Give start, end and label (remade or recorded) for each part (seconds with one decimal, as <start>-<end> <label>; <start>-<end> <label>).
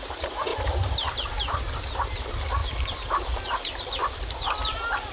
0.0-0.5 remade; 0.5-1.1 recorded; 1.1-5.1 remade